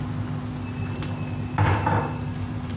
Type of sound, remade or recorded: recorded